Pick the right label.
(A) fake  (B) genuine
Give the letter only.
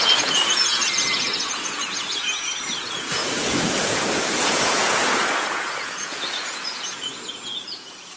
A